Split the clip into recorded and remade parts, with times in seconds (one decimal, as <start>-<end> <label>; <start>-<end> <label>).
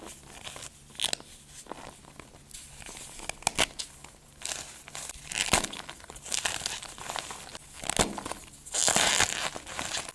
0.0-10.1 recorded